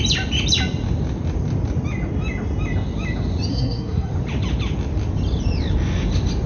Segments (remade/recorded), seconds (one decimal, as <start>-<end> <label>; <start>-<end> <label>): 0.0-3.5 recorded; 3.5-4.1 remade; 4.1-6.5 recorded